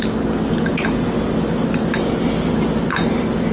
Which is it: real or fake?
real